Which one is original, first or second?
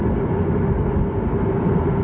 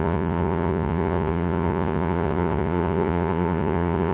first